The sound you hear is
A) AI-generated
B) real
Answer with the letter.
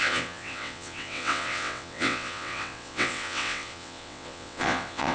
A